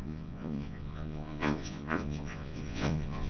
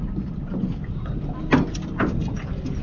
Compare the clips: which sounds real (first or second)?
second